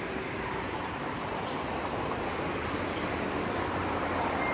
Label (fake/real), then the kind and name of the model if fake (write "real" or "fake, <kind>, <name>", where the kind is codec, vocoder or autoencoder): real